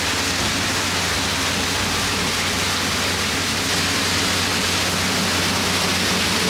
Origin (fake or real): real